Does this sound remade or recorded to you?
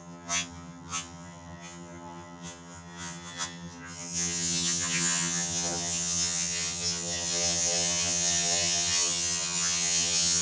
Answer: remade